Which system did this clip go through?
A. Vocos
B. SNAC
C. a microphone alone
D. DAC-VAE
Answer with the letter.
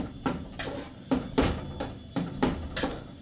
C